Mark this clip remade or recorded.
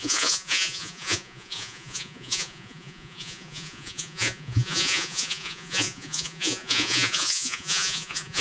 remade